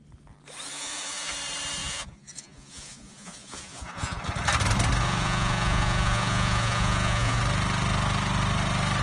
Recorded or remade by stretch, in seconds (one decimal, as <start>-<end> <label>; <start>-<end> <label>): 0.0-0.7 recorded; 0.7-1.3 remade; 1.3-1.8 recorded; 1.8-4.2 remade; 4.2-5.0 recorded; 5.0-7.4 remade; 7.4-9.0 recorded